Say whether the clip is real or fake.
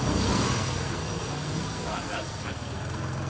fake